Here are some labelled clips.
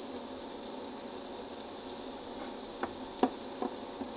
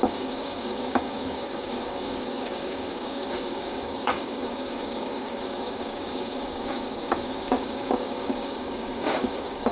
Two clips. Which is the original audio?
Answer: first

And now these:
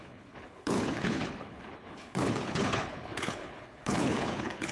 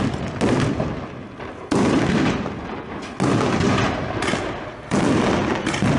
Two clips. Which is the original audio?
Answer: second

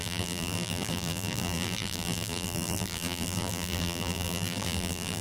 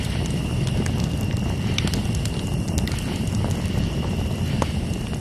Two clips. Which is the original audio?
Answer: second